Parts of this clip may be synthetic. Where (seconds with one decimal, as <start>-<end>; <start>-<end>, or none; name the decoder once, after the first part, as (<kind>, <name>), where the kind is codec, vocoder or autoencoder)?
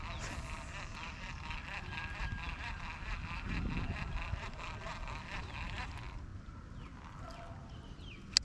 none